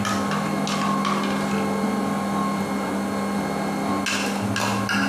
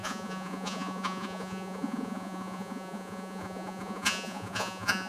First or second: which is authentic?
first